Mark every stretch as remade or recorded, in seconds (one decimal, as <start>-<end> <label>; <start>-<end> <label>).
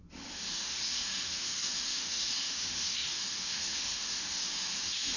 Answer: 0.0-5.2 remade